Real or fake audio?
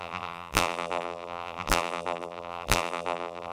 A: fake